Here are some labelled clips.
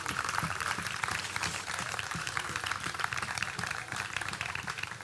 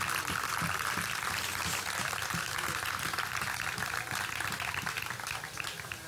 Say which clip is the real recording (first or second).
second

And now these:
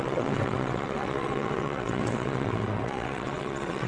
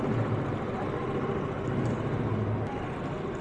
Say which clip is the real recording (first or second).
second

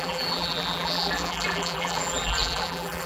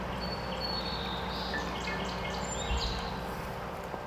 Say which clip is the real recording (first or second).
second